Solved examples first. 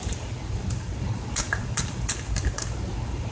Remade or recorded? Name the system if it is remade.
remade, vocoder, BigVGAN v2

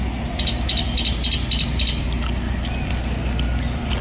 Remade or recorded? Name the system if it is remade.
recorded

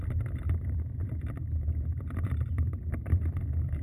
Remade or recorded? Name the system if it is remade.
remade, vocoder, BigVGAN v2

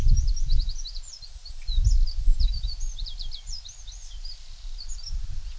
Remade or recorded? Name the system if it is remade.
remade, vocoder, BigVGAN v2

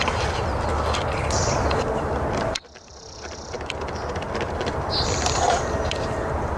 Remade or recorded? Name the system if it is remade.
remade, vocoder, BigVGAN v2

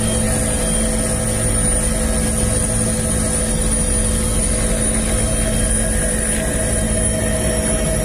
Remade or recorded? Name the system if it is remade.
recorded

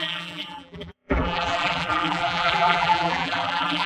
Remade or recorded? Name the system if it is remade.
remade, vocoder, BigVGAN v2